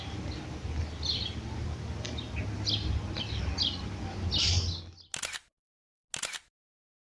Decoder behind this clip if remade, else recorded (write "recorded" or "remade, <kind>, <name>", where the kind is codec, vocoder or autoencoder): recorded